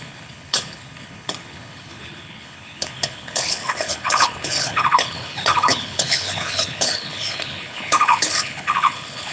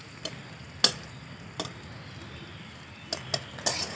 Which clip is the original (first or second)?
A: second